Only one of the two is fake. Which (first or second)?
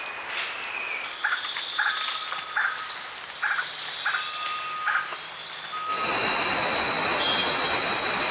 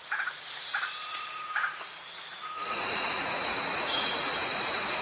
second